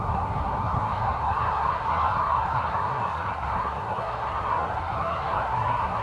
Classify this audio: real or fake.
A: fake